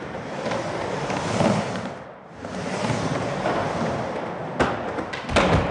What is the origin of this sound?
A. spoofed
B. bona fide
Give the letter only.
B